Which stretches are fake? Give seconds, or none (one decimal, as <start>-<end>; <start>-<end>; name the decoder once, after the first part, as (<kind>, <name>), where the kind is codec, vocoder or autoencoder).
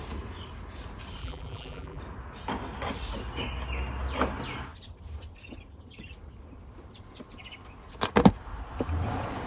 1.2-2.0 (vocoder, BigVGAN v2)